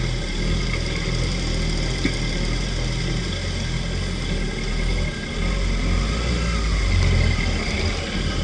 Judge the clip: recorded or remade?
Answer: recorded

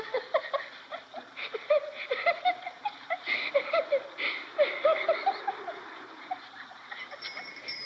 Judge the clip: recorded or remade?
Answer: recorded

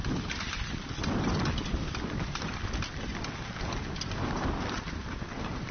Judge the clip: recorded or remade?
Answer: recorded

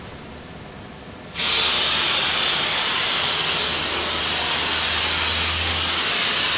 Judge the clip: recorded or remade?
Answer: recorded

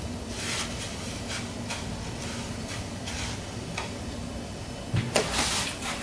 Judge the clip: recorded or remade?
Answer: remade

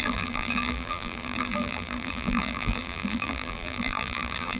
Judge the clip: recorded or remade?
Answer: remade